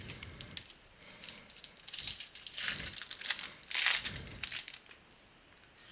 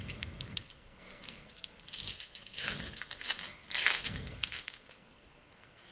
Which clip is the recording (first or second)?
first